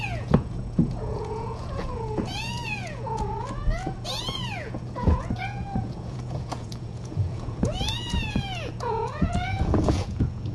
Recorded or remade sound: remade